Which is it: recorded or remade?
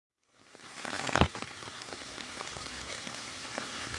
remade